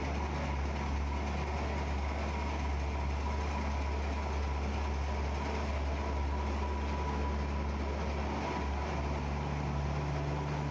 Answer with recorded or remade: recorded